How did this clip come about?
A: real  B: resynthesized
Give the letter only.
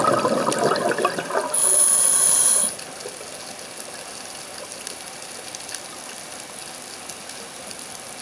A